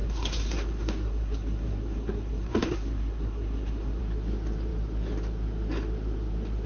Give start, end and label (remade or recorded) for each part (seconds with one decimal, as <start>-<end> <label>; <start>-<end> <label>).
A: 0.0-4.0 remade; 4.0-6.7 recorded